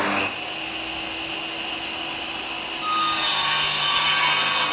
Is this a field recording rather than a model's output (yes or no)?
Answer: yes